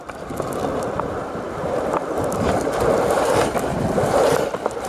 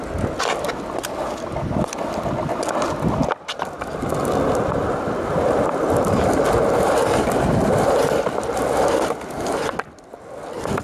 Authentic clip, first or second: second